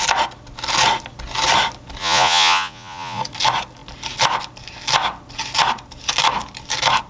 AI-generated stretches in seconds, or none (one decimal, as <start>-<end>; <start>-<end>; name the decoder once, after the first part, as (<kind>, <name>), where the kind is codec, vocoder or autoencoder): 2.0-3.2 (vocoder, Vocos)